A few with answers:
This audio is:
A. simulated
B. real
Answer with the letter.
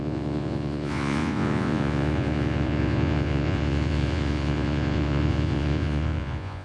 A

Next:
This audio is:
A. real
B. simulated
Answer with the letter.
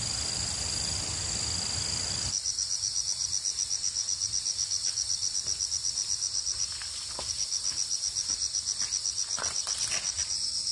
A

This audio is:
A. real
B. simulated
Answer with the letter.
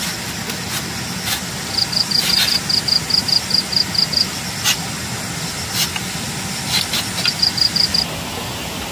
A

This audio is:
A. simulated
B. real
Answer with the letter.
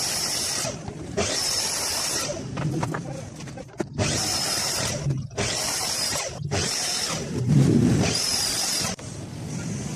A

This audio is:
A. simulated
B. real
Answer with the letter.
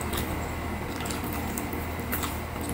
B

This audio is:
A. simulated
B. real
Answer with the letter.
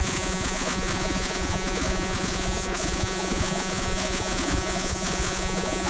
A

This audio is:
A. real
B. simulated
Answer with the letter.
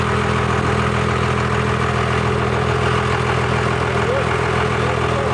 A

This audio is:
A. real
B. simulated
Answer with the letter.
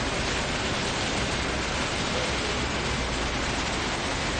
A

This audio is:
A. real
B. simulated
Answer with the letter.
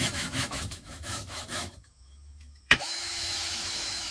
B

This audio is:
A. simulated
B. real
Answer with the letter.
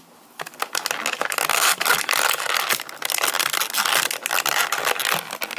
B